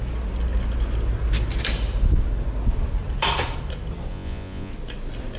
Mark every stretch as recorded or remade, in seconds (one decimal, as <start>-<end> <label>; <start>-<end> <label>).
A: 0.0-4.1 recorded; 4.1-4.7 remade; 4.7-5.4 recorded